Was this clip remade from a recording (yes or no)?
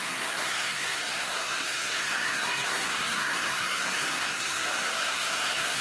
yes